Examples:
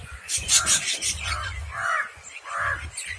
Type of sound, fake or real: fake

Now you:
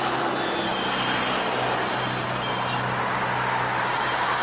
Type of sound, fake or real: real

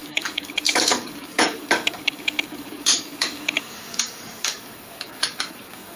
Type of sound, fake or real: fake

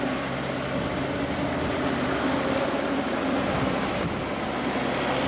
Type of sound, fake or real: real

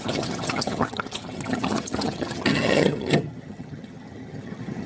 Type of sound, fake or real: fake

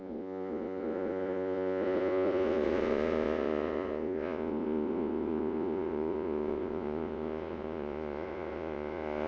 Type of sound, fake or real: fake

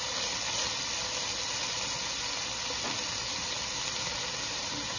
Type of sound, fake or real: real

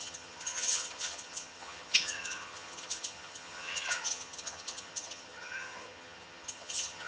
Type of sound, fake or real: fake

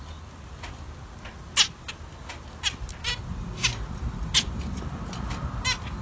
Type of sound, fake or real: real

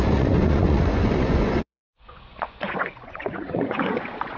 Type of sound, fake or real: fake